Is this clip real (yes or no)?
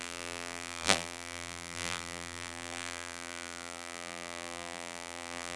no